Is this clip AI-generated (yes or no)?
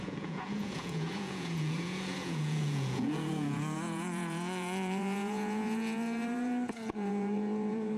yes